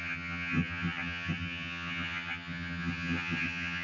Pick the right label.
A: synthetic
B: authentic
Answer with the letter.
A